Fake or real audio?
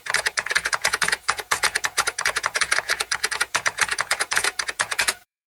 fake